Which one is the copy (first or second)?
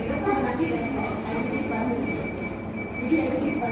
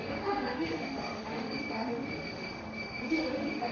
second